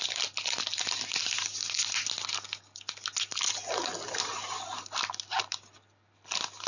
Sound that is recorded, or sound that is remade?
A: recorded